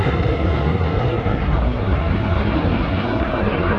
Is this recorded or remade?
remade